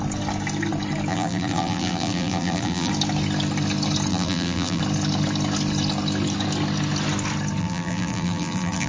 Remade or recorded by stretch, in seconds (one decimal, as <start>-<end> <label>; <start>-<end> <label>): 0.0-1.1 recorded; 1.1-2.9 remade; 2.9-4.1 recorded; 4.1-4.8 remade; 4.8-7.6 recorded; 7.6-8.9 remade